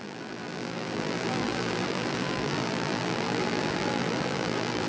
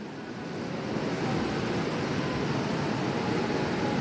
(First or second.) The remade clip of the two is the first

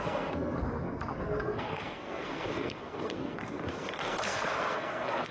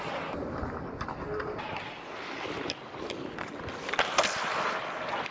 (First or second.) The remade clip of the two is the first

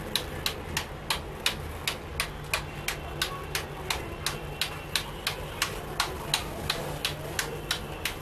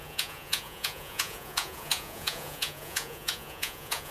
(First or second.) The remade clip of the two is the second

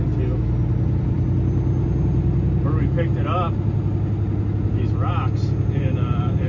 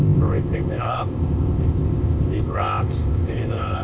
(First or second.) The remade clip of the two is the second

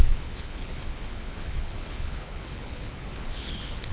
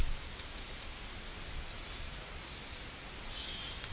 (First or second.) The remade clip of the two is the first